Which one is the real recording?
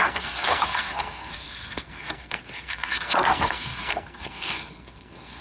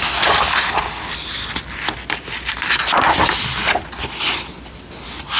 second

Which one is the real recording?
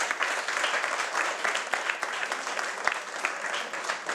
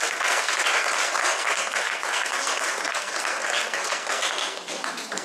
first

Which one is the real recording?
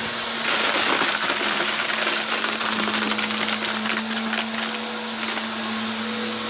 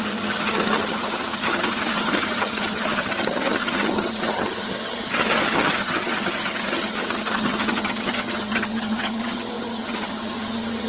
first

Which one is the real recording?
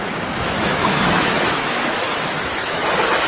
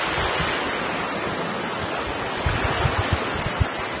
second